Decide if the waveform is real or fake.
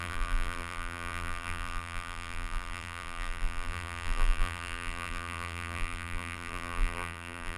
fake